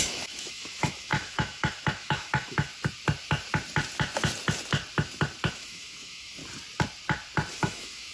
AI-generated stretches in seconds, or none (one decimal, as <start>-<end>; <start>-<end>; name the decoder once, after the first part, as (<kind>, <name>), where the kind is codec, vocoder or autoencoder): 0.0-2.7 (autoencoder, DAC-VAE); 5.5-6.4; 7.6-8.1